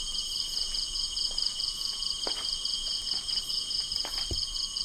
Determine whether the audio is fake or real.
fake